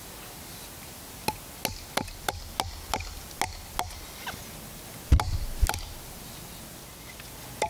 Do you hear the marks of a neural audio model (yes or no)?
no